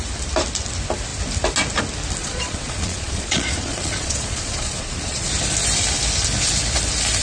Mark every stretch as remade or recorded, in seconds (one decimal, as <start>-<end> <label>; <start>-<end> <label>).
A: 0.0-2.2 recorded; 2.2-5.3 remade; 5.3-7.2 recorded